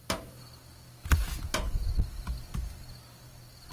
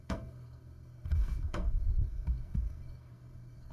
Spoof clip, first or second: second